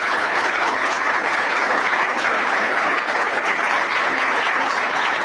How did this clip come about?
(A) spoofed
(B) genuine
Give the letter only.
A